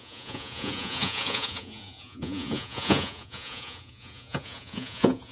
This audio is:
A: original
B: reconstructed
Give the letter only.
B